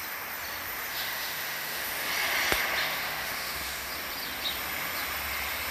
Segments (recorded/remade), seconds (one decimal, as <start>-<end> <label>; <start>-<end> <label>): 0.0-0.9 recorded; 0.9-2.1 remade; 2.1-2.8 recorded; 2.8-3.9 remade; 3.9-5.7 recorded